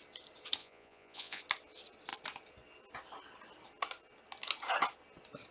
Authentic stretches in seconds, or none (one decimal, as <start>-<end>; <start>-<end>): 0.0-0.6; 1.4-5.5